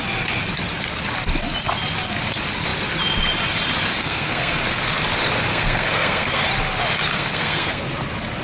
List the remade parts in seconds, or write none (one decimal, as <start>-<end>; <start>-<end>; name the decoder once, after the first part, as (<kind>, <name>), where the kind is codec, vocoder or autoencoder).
3.9-4.6 (codec, SNAC); 5.5-6.4; 7.1-7.8